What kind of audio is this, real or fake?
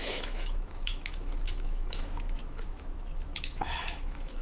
fake